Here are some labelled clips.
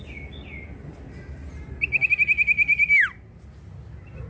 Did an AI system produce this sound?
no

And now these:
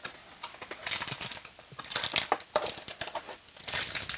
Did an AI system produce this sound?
no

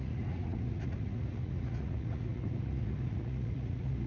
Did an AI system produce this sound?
yes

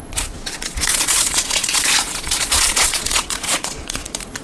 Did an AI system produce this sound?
yes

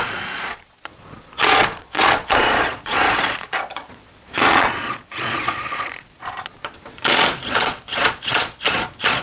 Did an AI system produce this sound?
yes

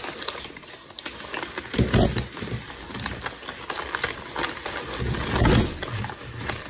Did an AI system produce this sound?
no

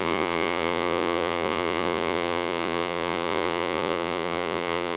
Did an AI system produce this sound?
yes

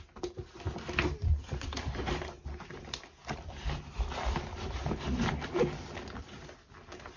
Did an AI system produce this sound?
no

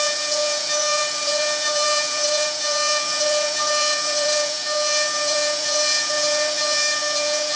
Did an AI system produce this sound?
yes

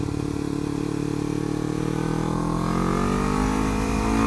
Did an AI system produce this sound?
no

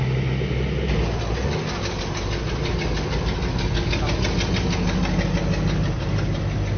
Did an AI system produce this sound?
no